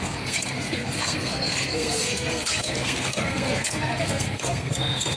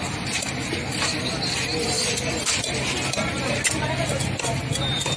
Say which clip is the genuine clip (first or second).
second